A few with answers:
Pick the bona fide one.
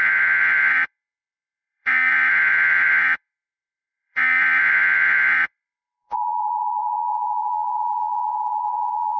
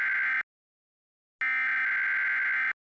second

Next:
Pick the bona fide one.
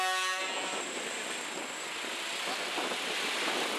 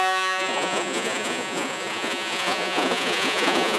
first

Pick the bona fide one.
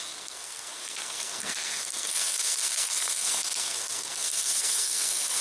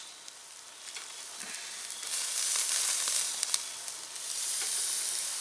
second